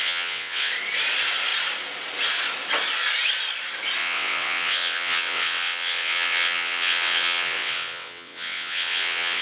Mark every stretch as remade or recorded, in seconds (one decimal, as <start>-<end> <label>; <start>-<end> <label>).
0.0-0.7 remade; 0.7-4.0 recorded; 4.0-9.4 remade